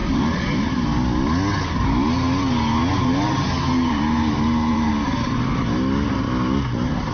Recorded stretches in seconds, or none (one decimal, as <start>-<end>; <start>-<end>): 0.5-2.9; 4.9-7.1